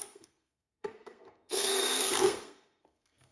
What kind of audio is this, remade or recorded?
remade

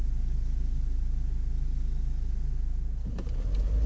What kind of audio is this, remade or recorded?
recorded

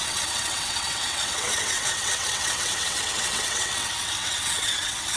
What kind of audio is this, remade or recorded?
remade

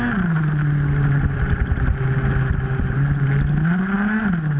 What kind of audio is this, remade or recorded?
recorded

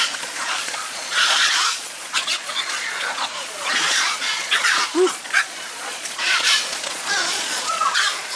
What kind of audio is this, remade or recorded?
remade